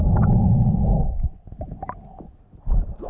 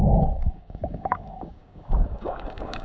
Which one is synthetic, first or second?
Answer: second